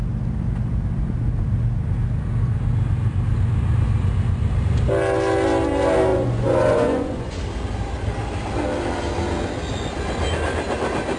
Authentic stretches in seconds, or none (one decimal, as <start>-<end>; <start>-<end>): 0.0-6.1; 7.4-11.2